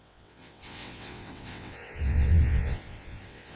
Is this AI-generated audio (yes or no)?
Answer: yes